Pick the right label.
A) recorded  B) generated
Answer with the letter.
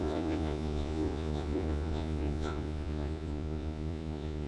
B